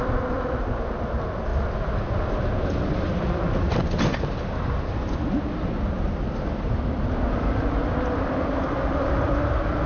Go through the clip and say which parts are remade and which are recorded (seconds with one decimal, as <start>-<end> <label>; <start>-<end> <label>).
0.0-1.5 remade; 1.5-2.3 recorded; 2.3-3.8 remade; 3.8-5.9 recorded; 5.9-9.9 remade